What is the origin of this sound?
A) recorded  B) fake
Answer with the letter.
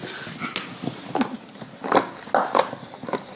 A